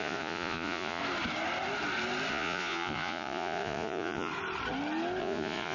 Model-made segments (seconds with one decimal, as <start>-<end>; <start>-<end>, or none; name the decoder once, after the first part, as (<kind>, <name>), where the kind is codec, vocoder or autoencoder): 0.0-1.0 (vocoder, Vocos); 2.3-4.3; 5.2-5.7